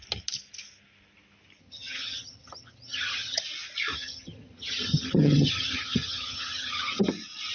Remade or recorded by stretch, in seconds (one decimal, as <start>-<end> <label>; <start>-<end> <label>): 0.0-1.6 recorded; 1.6-3.4 remade; 3.4-3.9 recorded; 3.9-7.0 remade; 7.0-7.5 recorded